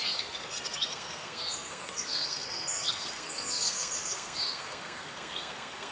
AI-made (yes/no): yes